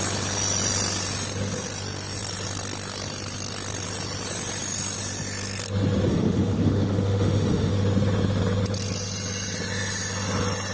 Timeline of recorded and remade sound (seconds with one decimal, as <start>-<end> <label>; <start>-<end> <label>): 0.0-6.1 recorded; 6.1-7.7 remade; 7.7-10.7 recorded